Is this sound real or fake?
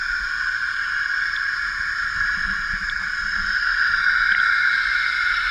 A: real